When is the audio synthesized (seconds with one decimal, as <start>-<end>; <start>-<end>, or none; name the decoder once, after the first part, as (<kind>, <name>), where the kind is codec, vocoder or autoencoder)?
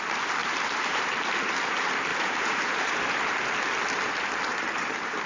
0.4-1.3 (vocoder, BigVGAN v2); 2.1-3.0; 4.5-5.3